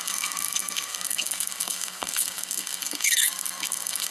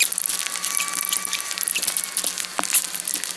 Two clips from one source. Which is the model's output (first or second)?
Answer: first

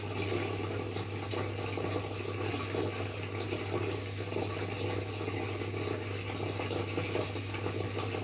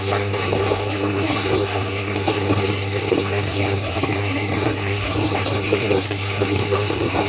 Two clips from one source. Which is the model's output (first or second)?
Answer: second